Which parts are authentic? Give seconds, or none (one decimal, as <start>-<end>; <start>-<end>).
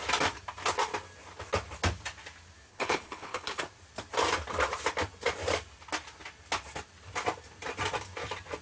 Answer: 0.0-2.7; 3.6-8.6